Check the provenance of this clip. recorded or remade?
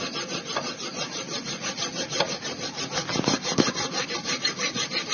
recorded